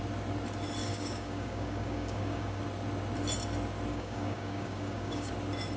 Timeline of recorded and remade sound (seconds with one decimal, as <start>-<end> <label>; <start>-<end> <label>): 0.0-0.8 recorded; 0.8-2.6 remade; 2.6-3.9 recorded; 3.9-5.3 remade; 5.3-5.8 recorded